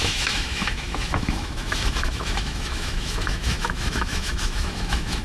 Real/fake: fake